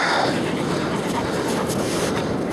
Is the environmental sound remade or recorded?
recorded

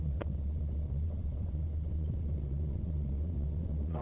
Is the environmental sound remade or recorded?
remade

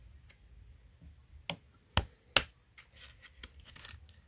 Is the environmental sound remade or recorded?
recorded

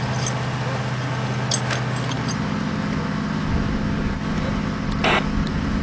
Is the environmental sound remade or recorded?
recorded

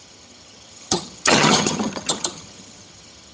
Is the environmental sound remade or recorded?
remade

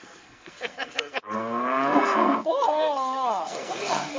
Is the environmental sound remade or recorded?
remade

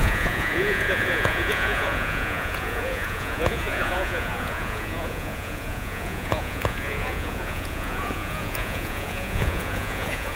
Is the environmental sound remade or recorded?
remade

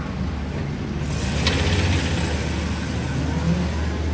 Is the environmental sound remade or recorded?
recorded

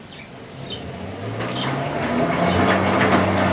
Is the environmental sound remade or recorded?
recorded